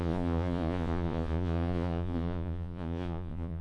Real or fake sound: fake